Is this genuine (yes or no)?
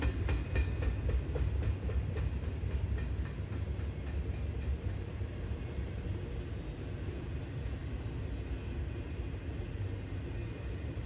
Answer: yes